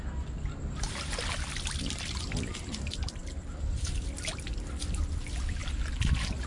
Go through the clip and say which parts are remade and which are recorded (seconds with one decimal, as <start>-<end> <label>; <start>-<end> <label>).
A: 0.0-6.5 recorded